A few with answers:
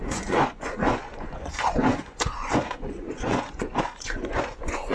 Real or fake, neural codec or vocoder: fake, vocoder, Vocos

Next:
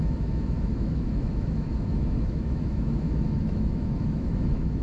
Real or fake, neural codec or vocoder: fake, autoencoder, DAC-VAE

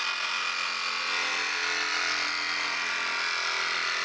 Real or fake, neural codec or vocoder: real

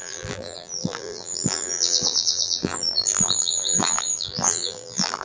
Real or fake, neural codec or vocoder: fake, vocoder, BigVGAN v2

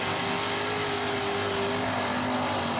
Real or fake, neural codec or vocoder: real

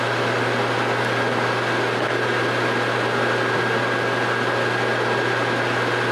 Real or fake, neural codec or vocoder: real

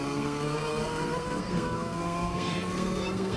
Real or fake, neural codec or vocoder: fake, codec, SNAC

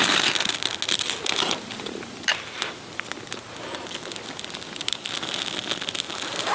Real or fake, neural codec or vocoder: real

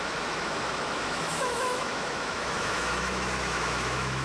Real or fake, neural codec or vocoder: fake, autoencoder, DAC-VAE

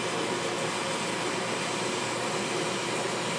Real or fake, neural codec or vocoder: real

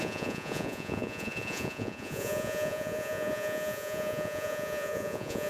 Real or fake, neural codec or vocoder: fake, vocoder, Vocos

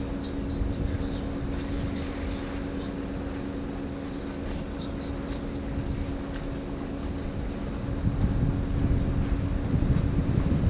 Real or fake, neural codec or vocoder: real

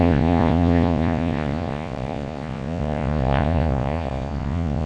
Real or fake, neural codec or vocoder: fake, vocoder, Vocos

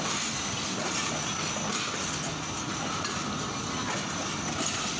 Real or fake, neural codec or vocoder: real